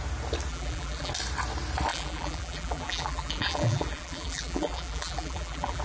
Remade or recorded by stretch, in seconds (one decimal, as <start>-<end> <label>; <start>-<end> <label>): 0.0-0.5 recorded; 0.5-1.1 remade; 1.1-1.9 recorded; 1.9-5.8 remade